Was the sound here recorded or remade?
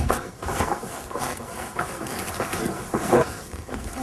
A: remade